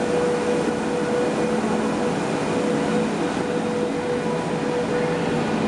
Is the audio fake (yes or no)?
no